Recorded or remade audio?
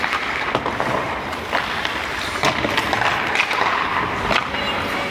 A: recorded